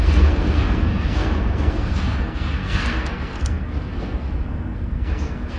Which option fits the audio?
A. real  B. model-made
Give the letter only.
B